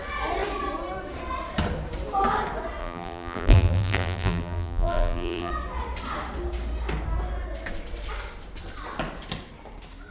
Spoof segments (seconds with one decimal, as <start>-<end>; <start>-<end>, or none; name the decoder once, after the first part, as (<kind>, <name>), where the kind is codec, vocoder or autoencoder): 2.8-5.5 (vocoder, BigVGAN v2)